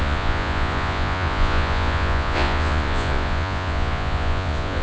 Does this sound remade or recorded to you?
remade